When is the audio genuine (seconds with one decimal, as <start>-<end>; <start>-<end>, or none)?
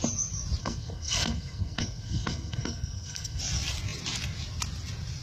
0.0-0.6; 3.4-5.2